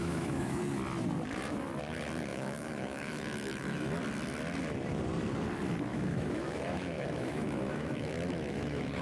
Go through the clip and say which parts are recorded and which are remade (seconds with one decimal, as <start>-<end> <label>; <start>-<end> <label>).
0.0-0.6 remade; 0.6-2.3 recorded; 2.3-3.9 remade; 3.9-5.9 recorded; 5.9-9.0 remade